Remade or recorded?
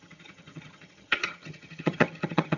remade